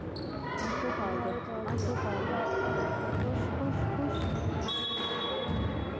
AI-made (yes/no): no